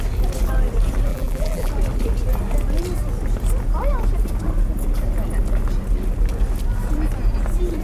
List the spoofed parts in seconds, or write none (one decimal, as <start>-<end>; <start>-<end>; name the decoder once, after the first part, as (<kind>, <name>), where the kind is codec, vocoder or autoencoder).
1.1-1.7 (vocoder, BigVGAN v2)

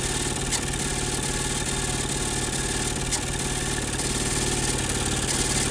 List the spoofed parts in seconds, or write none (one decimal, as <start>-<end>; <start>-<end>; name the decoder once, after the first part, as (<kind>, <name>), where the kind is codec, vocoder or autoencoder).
none

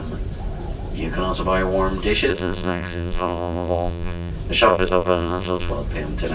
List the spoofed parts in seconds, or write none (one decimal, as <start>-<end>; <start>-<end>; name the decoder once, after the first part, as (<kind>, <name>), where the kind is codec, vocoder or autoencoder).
2.3-4.3 (vocoder, BigVGAN v2); 4.7-5.7